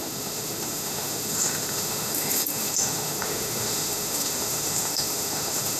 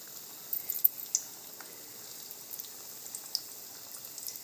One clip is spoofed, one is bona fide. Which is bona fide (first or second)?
second